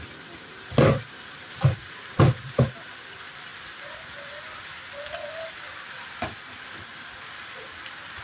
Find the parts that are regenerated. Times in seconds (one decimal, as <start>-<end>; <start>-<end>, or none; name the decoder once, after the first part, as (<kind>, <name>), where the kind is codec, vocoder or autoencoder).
0.0-8.2 (vocoder, BigVGAN v2)

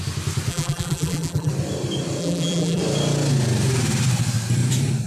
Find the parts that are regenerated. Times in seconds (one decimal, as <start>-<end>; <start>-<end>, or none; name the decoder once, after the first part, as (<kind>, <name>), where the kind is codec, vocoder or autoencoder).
0.5-1.5 (vocoder, BigVGAN v2); 2.2-2.8